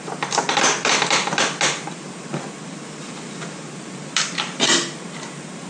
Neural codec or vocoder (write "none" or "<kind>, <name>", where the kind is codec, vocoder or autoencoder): none